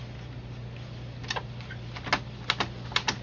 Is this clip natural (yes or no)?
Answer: yes